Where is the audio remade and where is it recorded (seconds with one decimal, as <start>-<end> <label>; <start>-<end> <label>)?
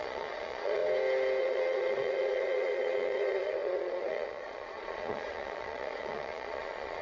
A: 0.0-0.8 remade; 0.8-1.4 recorded; 1.4-7.0 remade